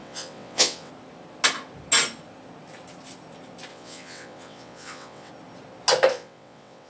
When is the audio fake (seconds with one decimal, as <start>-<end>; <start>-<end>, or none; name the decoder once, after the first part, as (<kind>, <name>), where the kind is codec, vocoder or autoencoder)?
0.0-0.9 (vocoder, WaveNeXt); 3.7-5.3; 6.1-6.9